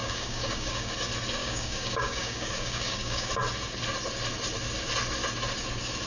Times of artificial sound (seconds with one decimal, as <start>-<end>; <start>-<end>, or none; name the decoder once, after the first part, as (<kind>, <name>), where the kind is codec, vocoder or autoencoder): 0.0-0.9 (codec, DAC); 1.4-3.3